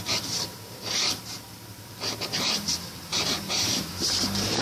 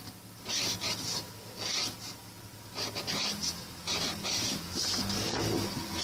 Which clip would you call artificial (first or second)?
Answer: first